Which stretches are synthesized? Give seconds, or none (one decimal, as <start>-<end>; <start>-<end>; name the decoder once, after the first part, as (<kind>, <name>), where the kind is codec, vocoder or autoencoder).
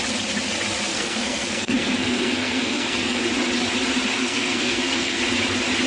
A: 0.9-3.2 (codec, SNAC); 4.2-5.2